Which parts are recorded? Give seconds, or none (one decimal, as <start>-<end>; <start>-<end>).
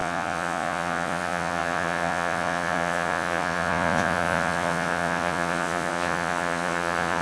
none